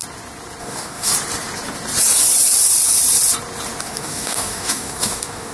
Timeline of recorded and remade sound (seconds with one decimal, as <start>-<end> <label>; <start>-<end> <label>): 0.0-0.6 recorded; 0.6-1.1 remade; 1.1-3.8 recorded; 3.8-5.5 remade